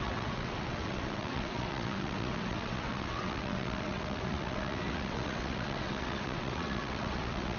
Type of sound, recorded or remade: remade